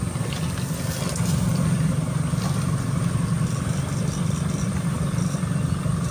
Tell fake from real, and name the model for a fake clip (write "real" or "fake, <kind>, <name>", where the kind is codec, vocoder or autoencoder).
real